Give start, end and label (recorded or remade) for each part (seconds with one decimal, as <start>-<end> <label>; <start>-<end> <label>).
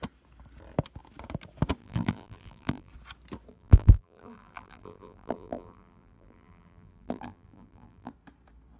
0.0-1.8 recorded; 1.8-2.9 remade; 2.9-3.5 recorded; 3.5-8.1 remade; 8.1-8.8 recorded